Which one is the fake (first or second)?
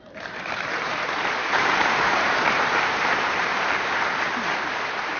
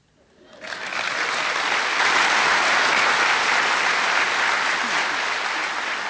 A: first